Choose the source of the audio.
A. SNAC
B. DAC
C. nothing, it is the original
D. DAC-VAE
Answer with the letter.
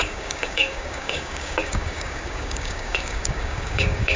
B